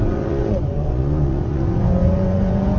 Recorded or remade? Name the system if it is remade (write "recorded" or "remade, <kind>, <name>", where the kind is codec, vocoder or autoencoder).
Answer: remade, vocoder, Vocos